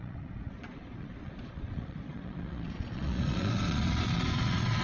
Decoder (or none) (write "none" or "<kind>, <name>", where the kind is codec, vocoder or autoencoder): vocoder, Vocos